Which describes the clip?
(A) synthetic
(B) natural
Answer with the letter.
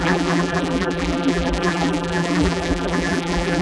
A